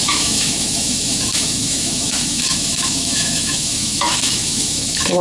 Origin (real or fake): fake